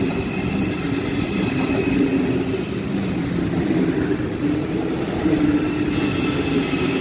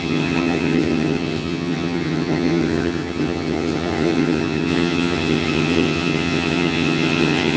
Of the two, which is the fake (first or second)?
second